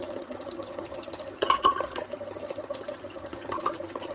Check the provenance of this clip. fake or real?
fake